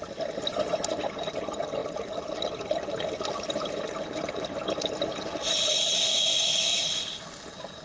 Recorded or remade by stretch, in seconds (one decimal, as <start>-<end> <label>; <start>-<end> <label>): 0.0-7.8 recorded